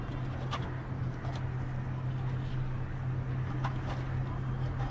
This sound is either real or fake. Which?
real